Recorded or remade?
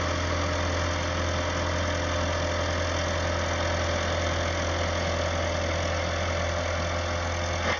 recorded